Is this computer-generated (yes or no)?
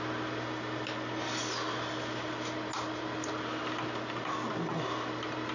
no